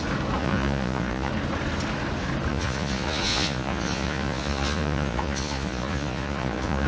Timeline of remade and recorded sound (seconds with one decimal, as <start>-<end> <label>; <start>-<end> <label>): 0.0-0.4 recorded; 0.4-1.3 remade; 1.3-2.5 recorded; 2.5-6.9 remade